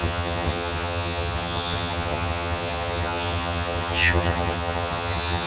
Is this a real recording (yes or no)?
no